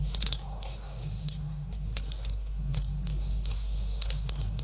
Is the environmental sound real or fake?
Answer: fake